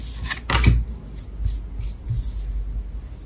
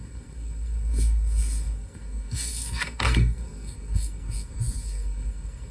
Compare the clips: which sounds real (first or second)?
first